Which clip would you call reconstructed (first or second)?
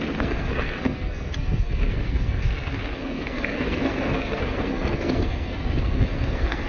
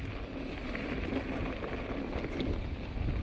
first